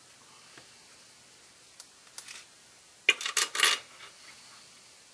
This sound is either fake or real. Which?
real